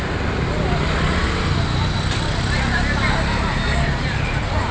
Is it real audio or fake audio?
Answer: real